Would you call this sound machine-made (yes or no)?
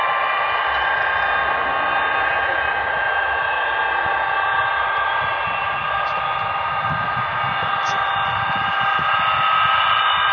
no